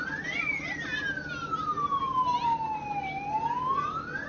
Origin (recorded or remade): recorded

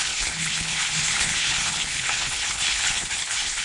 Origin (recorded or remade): remade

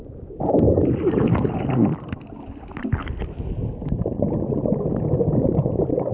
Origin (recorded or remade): recorded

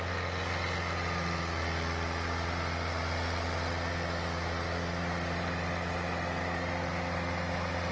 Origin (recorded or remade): recorded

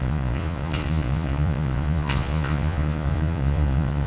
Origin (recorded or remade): remade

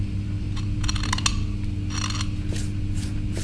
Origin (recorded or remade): recorded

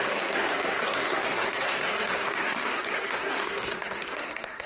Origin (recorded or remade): remade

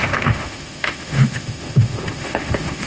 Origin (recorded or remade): remade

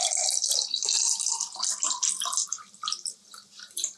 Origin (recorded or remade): recorded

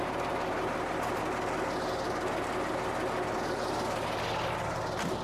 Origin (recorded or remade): recorded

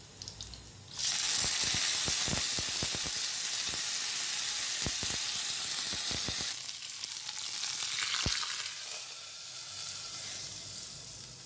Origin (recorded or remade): recorded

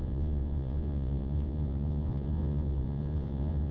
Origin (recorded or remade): remade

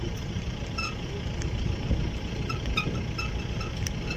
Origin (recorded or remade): recorded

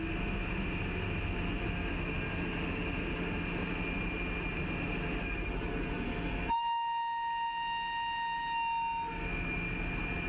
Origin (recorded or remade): recorded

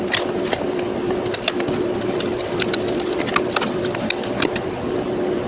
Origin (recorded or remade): recorded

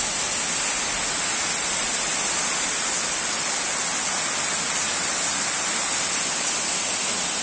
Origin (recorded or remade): recorded